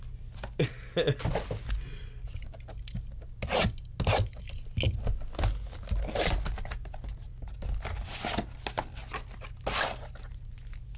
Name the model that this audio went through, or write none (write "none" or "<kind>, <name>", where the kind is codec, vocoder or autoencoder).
none